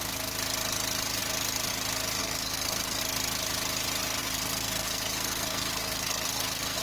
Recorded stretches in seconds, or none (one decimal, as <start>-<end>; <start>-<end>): 0.0-2.2; 3.0-4.2